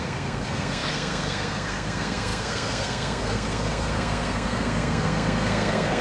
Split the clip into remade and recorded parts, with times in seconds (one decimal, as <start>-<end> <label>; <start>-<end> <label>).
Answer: 0.0-6.0 remade